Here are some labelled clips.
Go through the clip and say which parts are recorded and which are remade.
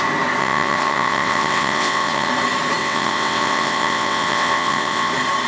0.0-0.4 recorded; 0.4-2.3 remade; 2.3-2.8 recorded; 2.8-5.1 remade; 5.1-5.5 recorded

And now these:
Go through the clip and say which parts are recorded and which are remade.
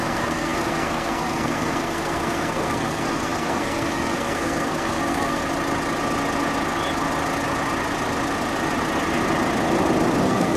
0.0-5.4 remade; 5.4-10.2 recorded; 10.2-10.6 remade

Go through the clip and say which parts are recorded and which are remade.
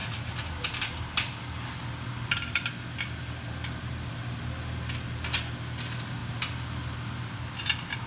0.0-8.1 recorded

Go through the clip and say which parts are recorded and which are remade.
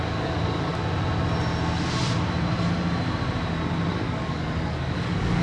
0.0-0.7 remade; 0.7-3.9 recorded; 3.9-5.4 remade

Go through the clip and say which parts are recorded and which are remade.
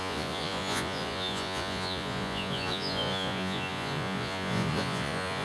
0.0-5.4 remade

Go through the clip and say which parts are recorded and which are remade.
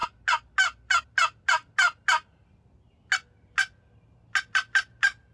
0.0-5.3 recorded